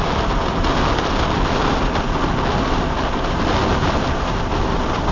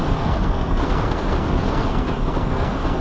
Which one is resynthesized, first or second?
second